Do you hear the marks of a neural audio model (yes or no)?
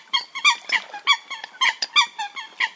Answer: no